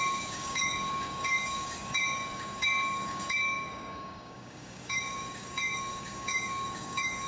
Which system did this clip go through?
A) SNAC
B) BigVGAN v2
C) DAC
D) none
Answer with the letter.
C